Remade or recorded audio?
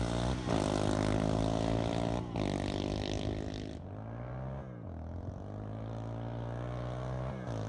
recorded